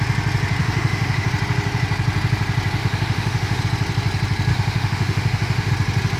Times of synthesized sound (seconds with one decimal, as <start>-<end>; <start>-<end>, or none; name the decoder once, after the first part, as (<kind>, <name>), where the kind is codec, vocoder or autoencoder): 0.6-1.3 (autoencoder, DAC-VAE); 2.8-3.6; 4.5-5.7